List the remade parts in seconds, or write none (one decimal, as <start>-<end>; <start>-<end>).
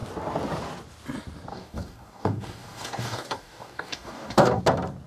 1.5-4.6